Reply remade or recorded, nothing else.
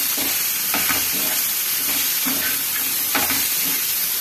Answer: remade